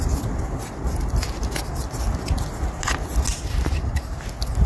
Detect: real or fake real